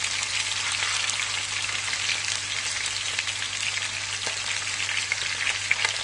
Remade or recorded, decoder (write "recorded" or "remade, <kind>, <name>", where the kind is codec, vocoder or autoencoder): recorded